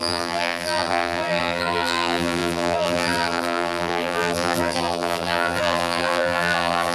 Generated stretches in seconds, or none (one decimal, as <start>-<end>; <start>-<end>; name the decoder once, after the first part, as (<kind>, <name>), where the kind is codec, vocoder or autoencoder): 0.0-6.9 (vocoder, BigVGAN v2)

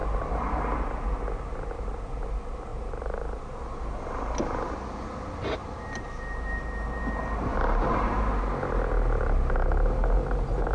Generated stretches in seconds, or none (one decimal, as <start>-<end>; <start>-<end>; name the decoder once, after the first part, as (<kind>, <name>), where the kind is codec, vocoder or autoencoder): 2.7-3.4 (vocoder, BigVGAN v2); 5.6-7.0

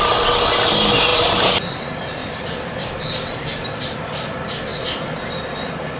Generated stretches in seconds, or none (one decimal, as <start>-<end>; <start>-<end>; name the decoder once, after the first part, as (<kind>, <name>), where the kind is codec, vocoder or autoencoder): 1.1-1.8 (vocoder, BigVGAN v2); 2.2-4.0; 4.7-6.0

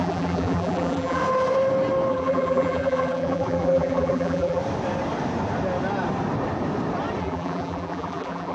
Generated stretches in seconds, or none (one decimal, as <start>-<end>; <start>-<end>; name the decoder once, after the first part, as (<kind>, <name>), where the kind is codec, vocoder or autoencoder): 0.0-1.2 (vocoder, BigVGAN v2); 2.1-4.6; 7.2-8.5